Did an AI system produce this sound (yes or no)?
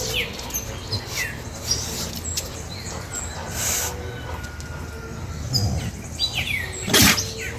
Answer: no